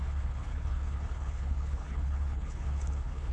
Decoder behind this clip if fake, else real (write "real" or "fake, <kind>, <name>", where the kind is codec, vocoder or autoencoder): fake, codec, HILCodec